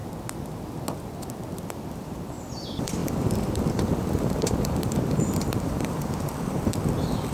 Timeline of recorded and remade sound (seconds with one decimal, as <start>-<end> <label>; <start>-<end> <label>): 0.0-1.7 recorded; 1.7-7.3 remade